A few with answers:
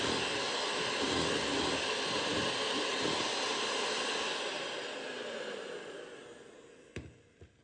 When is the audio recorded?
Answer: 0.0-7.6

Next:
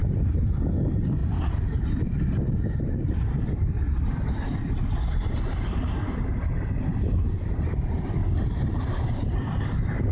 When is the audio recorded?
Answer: 0.0-1.2; 3.2-8.2; 9.6-10.1